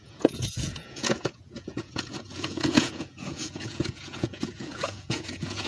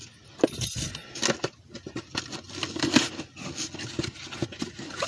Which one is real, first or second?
second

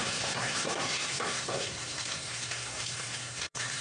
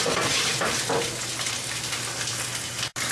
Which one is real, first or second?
second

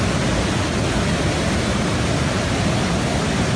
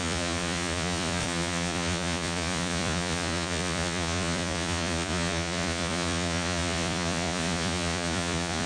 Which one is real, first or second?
first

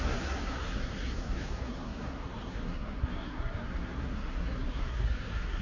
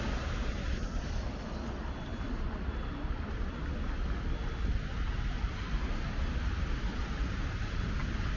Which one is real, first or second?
second